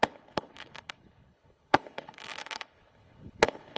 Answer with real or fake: fake